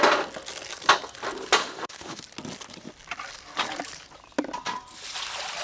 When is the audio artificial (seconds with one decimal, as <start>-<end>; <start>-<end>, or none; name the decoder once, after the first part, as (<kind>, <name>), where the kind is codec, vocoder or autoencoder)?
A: 1.6-2.2 (autoencoder, DAC-VAE)